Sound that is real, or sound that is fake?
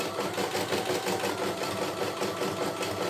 real